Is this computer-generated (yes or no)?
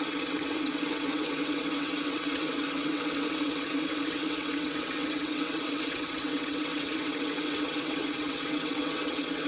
yes